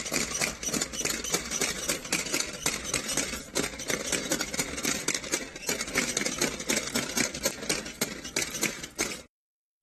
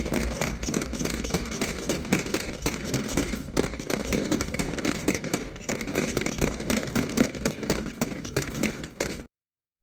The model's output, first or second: second